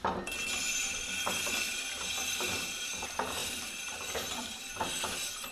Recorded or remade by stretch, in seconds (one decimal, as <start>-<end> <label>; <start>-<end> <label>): 0.0-3.4 recorded; 3.4-4.4 remade; 4.4-5.5 recorded